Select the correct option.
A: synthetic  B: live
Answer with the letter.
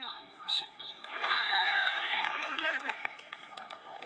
A